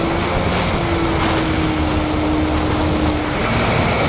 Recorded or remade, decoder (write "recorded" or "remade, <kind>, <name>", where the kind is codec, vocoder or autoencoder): recorded